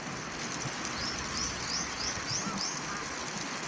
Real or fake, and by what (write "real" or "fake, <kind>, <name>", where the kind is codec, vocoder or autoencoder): real